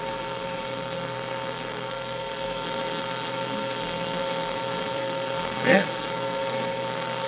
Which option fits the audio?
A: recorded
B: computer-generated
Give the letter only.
B